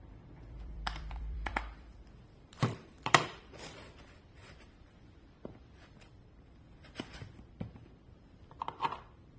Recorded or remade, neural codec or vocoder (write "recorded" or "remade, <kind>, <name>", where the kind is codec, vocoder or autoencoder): remade, vocoder, BigVGAN v2